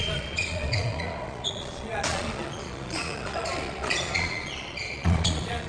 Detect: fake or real fake